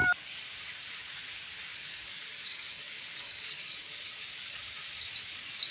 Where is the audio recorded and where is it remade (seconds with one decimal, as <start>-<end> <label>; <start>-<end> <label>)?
0.0-1.7 recorded; 1.7-4.1 remade; 4.1-5.7 recorded